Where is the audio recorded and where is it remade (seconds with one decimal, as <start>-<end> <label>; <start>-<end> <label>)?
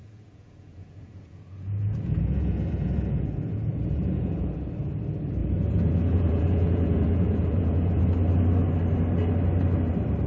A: 0.0-4.7 remade; 4.7-5.4 recorded; 5.4-8.0 remade; 8.0-10.3 recorded